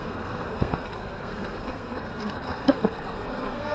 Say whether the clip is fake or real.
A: fake